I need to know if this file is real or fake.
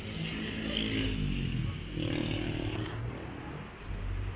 real